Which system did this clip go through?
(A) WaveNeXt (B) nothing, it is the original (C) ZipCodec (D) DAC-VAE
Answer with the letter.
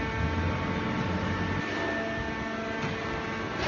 B